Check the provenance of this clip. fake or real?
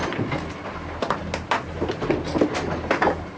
real